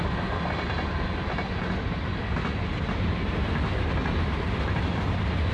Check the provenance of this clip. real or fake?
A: real